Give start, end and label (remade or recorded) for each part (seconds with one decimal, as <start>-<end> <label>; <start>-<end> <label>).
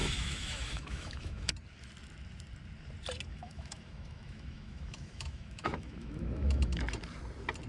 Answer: 0.0-1.5 remade; 1.5-3.3 recorded; 3.3-6.8 remade; 6.8-7.7 recorded